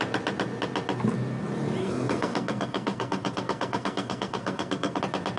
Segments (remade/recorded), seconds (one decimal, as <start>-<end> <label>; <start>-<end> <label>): 0.0-1.8 recorded; 1.8-5.0 remade; 5.0-5.4 recorded